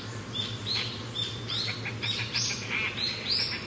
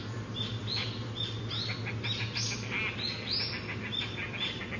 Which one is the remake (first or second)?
first